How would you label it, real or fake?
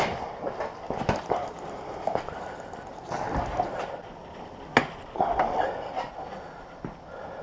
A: real